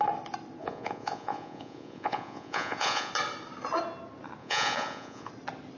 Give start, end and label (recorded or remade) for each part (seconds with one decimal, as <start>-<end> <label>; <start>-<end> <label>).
0.0-0.6 recorded; 0.6-3.1 remade; 3.1-4.4 recorded; 4.4-5.3 remade; 5.3-5.8 recorded